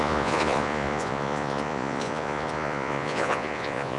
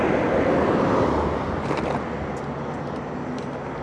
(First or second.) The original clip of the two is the second